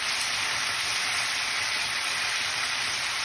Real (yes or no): no